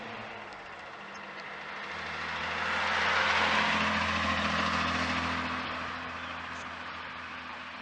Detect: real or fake real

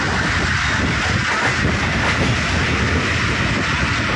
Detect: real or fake real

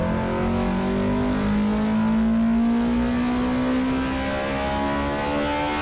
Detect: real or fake real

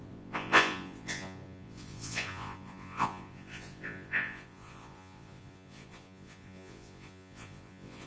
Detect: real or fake fake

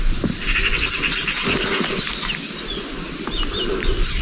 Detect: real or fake real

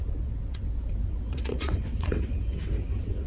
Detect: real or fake fake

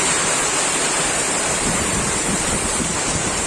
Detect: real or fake fake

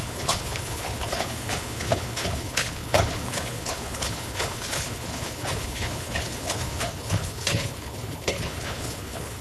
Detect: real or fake fake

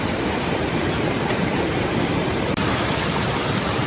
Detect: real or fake fake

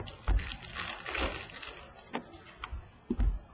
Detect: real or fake real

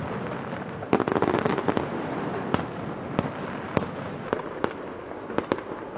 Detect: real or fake real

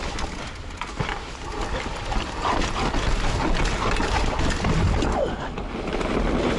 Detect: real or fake real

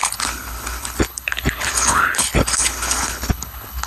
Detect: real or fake fake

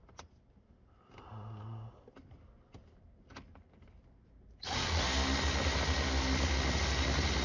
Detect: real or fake real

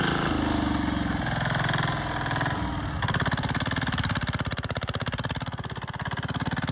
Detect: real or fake real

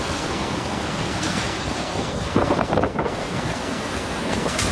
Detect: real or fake fake